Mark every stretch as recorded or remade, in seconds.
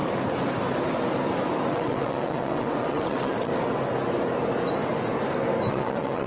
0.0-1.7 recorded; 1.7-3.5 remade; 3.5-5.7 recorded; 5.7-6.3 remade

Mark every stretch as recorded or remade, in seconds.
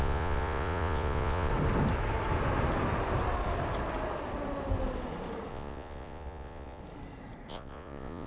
0.0-1.5 remade; 1.5-5.5 recorded; 5.5-6.8 remade; 6.8-7.5 recorded; 7.5-8.3 remade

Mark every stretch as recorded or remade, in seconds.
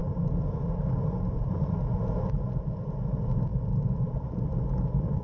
0.0-3.1 recorded; 3.1-5.2 remade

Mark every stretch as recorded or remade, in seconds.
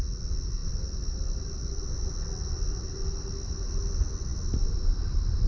0.0-5.5 recorded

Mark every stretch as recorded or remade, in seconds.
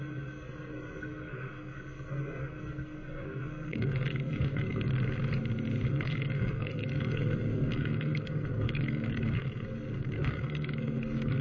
0.0-4.9 remade; 4.9-5.9 recorded; 5.9-11.4 remade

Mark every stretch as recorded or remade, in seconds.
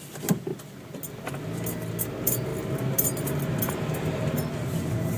0.0-5.2 recorded